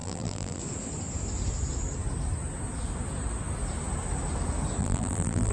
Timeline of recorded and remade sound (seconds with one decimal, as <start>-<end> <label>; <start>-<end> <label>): 0.0-0.6 remade; 0.6-4.8 recorded; 4.8-5.5 remade

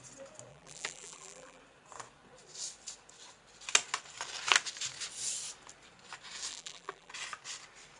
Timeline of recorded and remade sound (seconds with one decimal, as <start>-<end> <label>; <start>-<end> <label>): 0.0-0.5 recorded; 0.5-1.6 remade; 1.6-6.5 recorded; 6.5-7.1 remade; 7.1-8.0 recorded

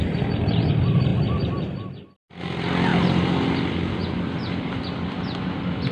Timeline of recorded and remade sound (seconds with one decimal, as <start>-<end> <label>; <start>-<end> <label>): 0.0-5.9 recorded

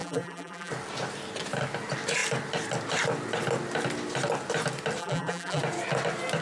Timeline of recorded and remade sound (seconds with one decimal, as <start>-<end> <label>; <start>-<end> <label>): 0.0-0.7 remade; 0.7-5.0 recorded; 5.0-5.6 remade; 5.6-6.4 recorded

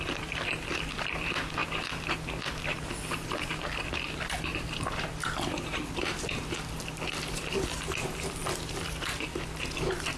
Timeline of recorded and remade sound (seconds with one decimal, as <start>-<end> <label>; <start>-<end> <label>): 0.0-9.3 remade; 9.3-10.2 recorded

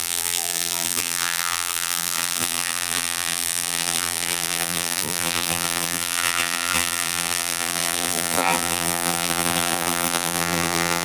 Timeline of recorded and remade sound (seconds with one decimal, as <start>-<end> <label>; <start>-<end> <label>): 0.0-11.0 remade